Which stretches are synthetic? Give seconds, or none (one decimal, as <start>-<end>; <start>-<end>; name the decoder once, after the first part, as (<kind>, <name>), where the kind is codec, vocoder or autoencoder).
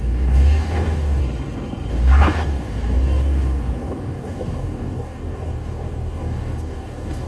0.0-1.2 (codec, DAC); 1.9-7.3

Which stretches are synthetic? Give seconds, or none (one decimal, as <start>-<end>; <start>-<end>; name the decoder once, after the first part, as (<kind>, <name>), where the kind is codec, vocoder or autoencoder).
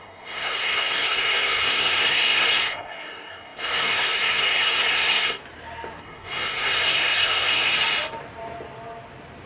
0.0-5.4 (codec, SNAC); 6.0-7.7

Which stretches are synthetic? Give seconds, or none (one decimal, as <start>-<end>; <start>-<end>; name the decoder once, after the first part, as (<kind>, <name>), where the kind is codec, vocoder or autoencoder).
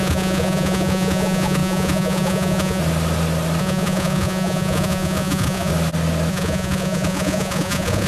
0.0-2.8 (vocoder, Vocos); 3.6-5.7; 6.3-8.1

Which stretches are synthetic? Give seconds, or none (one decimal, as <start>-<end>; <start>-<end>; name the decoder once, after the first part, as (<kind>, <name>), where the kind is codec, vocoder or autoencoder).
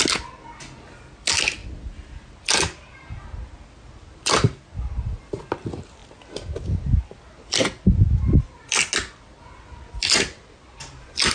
none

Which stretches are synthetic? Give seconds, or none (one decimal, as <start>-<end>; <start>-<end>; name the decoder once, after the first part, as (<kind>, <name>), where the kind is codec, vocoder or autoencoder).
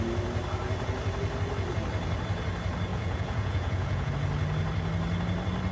2.9-4.1 (vocoder, Vocos)